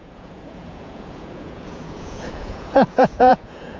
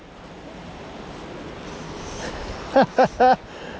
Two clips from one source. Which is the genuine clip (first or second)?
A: second